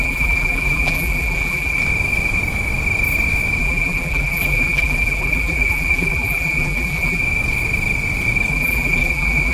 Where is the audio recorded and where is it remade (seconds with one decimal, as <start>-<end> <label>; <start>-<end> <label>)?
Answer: 0.0-1.8 remade; 1.8-3.6 recorded; 3.6-7.2 remade; 7.2-8.5 recorded; 8.5-9.5 remade